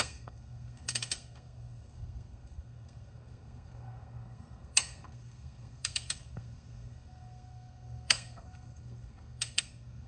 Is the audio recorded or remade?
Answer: remade